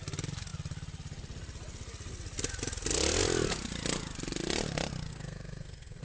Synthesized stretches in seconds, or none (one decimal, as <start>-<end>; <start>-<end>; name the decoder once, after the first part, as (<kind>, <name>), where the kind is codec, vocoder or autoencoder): 5.1-6.0 (codec, SNAC)